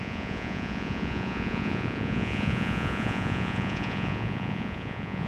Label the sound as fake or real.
fake